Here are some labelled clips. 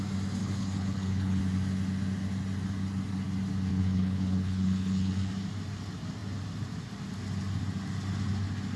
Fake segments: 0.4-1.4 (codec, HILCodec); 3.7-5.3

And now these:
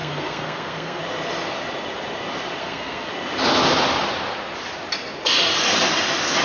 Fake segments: 0.0-1.0 (codec, SNAC); 2.6-3.1

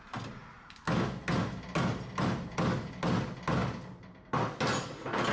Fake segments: none

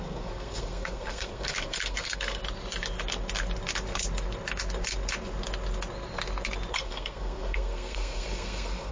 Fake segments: 0.0-2.4 (codec, SNAC); 6.7-8.9

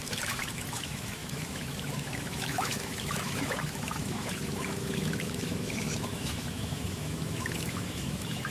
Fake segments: 0.0-8.5 (autoencoder, DAC-VAE)

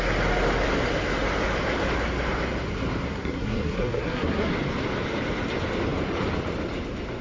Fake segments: 3.0-4.5 (codec, SNAC)

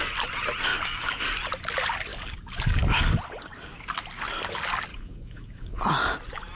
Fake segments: 0.7-1.2 (codec, DAC); 2.1-3.1; 4.9-5.8